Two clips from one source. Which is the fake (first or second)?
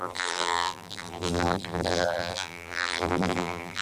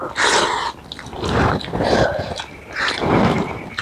first